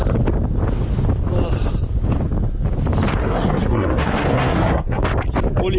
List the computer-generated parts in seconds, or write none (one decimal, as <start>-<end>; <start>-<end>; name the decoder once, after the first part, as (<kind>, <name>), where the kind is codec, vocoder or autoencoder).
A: 3.2-5.0 (codec, SNAC)